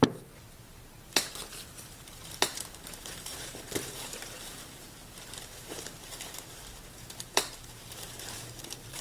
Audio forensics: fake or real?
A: fake